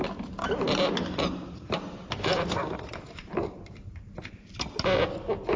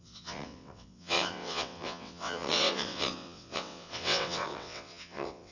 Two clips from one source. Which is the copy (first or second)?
second